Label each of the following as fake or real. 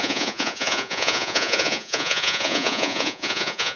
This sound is fake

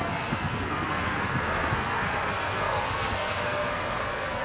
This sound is fake